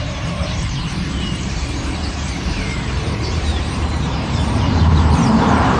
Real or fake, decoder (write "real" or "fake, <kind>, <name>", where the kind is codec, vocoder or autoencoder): fake, vocoder, BigVGAN v2